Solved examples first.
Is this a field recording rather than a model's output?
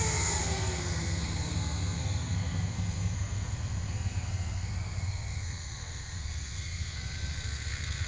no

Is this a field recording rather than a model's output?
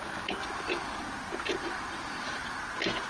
yes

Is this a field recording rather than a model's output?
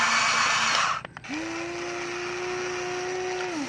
yes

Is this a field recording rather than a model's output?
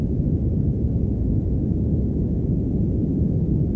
yes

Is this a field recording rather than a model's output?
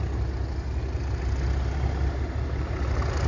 yes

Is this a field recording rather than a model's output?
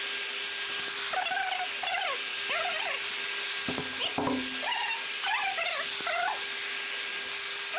yes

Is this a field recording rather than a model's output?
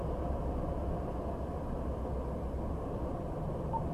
yes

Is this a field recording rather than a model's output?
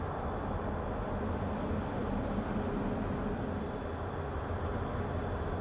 yes